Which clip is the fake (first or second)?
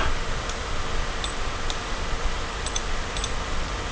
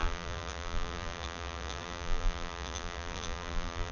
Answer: second